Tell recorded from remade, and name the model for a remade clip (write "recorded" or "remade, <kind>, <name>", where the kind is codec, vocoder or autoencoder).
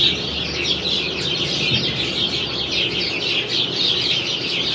recorded